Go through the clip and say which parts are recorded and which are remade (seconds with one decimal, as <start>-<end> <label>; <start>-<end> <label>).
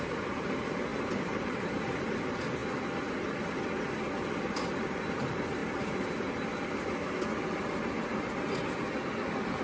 0.0-2.6 remade; 2.6-4.3 recorded; 4.3-5.6 remade; 5.6-9.6 recorded